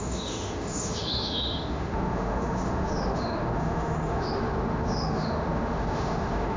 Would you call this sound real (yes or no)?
no